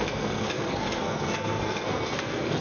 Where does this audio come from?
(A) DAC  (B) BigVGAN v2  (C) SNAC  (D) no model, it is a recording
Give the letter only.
C